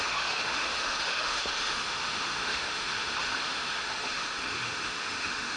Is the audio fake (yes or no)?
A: yes